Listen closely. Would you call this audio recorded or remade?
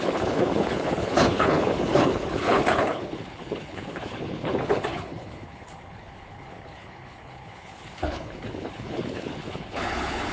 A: remade